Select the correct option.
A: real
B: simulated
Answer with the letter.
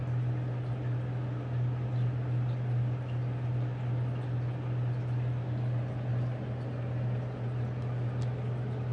A